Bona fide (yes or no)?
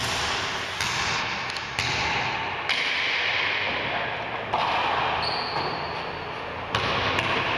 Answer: yes